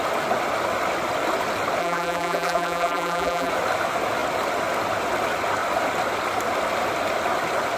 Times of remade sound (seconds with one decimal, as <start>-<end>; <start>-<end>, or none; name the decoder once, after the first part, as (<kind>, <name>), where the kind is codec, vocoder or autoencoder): 1.8-3.5 (vocoder, BigVGAN v2)